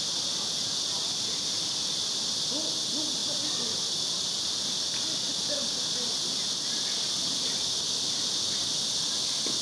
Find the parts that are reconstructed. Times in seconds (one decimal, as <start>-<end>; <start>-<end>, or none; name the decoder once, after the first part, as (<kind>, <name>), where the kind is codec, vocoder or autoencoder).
none